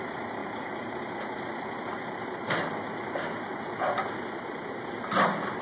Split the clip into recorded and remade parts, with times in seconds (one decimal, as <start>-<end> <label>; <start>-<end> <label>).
0.0-0.4 recorded; 0.4-1.2 remade; 1.2-5.6 recorded